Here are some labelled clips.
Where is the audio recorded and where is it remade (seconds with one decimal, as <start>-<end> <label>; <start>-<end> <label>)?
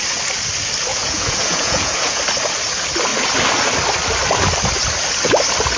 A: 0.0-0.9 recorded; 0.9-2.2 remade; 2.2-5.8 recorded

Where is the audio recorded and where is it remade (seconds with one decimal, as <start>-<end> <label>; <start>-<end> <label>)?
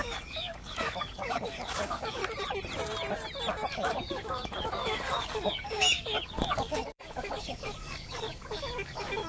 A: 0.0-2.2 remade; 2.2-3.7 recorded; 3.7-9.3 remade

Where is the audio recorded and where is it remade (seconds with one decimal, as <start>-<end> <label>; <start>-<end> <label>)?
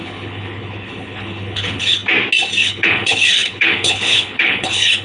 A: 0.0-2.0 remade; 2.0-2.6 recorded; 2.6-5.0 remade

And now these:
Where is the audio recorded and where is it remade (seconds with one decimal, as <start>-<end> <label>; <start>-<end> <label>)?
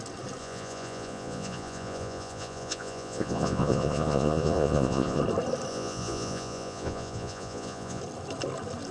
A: 0.0-0.4 recorded; 0.4-5.2 remade; 5.2-5.7 recorded; 5.7-8.0 remade; 8.0-8.9 recorded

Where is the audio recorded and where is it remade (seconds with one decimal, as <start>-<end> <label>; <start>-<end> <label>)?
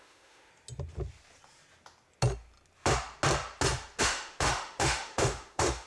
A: 0.0-0.5 remade; 0.5-4.0 recorded; 4.0-5.9 remade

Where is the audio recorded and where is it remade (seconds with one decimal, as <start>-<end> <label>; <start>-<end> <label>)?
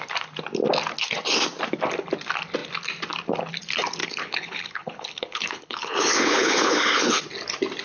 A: 0.0-4.0 recorded; 4.0-7.2 remade; 7.2-7.8 recorded